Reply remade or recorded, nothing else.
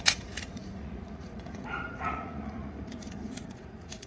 remade